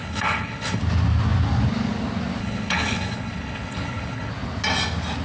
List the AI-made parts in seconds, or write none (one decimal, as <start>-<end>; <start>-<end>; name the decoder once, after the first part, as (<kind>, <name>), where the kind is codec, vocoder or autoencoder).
0.0-0.8 (codec, HILCodec); 2.4-4.3